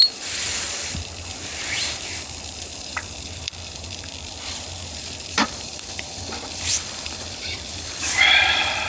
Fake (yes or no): yes